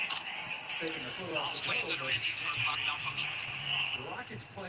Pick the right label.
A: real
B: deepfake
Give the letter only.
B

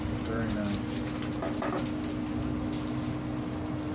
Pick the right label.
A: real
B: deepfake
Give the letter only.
A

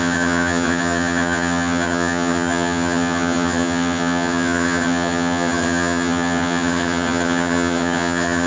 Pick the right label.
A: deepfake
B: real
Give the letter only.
A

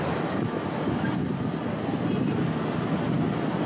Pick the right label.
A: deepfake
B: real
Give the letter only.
B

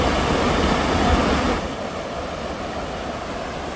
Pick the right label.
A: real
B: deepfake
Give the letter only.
A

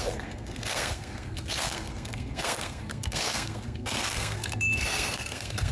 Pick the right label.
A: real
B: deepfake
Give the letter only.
B